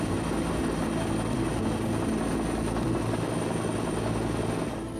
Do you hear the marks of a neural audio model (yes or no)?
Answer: no